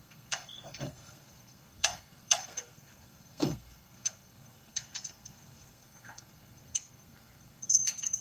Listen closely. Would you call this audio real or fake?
fake